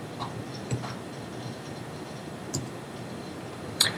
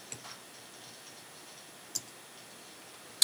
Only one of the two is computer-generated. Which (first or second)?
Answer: first